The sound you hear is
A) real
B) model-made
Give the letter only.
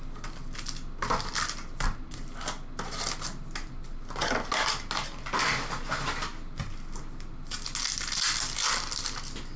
A